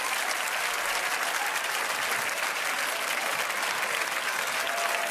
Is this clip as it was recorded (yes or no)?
yes